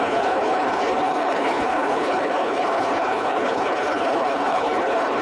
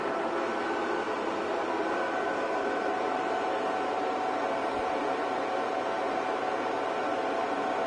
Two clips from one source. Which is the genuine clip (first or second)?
second